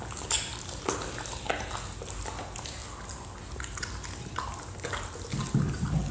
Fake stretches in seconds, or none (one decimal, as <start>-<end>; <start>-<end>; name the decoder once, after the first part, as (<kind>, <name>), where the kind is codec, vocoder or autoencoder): none